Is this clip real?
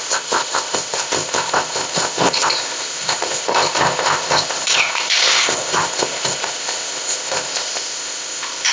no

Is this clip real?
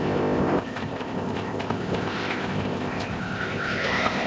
no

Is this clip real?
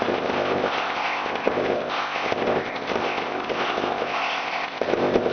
no